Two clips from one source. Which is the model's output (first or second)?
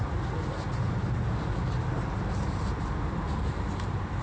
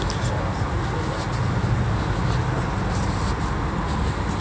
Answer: first